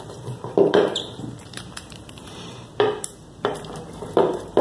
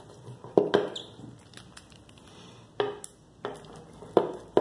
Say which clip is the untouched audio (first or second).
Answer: second